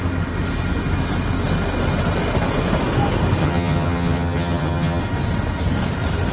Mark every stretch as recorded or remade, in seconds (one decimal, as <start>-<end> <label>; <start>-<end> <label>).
0.0-3.4 recorded; 3.4-5.0 remade; 5.0-6.3 recorded